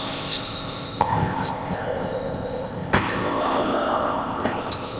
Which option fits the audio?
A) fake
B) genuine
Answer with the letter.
A